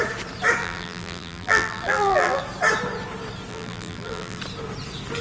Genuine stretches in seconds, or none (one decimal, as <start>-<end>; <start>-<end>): 0.0-0.6; 2.4-3.5; 4.4-5.2